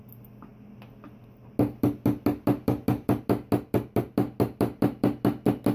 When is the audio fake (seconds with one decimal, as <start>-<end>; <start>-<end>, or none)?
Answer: none